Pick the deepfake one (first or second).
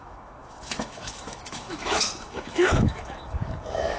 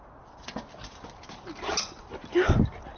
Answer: first